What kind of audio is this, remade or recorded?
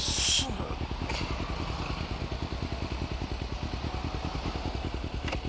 recorded